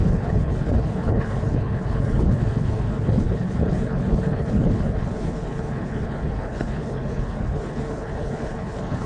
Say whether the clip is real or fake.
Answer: fake